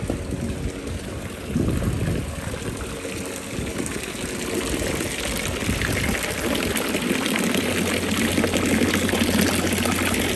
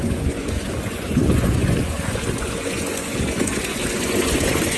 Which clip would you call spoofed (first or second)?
second